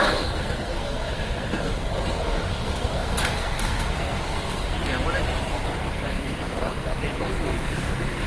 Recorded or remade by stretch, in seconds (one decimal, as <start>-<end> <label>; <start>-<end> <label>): 0.0-4.8 remade; 4.8-5.4 recorded; 5.4-8.3 remade